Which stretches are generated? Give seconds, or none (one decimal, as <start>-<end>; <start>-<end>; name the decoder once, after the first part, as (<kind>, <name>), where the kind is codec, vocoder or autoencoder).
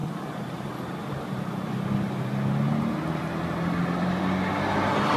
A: none